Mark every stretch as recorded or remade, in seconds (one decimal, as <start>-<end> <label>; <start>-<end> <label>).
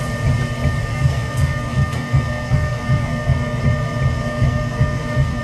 0.0-0.8 recorded; 0.8-3.6 remade; 3.6-4.2 recorded; 4.2-5.4 remade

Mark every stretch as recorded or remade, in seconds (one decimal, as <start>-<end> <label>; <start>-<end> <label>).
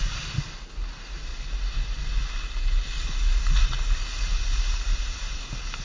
0.0-5.8 recorded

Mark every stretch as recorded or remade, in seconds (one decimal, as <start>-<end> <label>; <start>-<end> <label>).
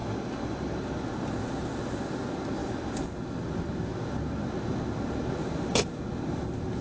0.0-6.8 recorded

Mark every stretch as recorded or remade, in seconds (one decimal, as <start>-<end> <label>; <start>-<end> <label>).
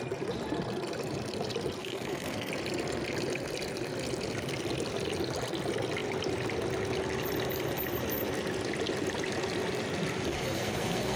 0.0-1.8 recorded; 1.8-2.5 remade; 2.5-10.3 recorded; 10.3-11.2 remade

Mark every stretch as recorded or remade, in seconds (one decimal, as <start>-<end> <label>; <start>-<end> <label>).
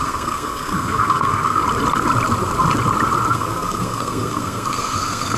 0.0-1.6 remade; 1.6-3.3 recorded; 3.3-5.4 remade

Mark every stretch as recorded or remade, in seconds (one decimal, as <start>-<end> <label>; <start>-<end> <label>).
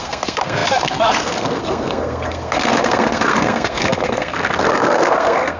0.0-5.6 remade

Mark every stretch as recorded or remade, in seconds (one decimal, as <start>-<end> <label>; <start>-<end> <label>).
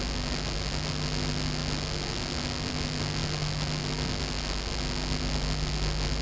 0.0-6.2 recorded